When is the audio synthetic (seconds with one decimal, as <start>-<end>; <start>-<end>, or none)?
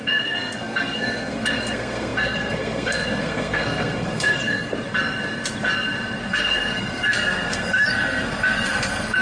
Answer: 0.0-4.7; 6.3-9.2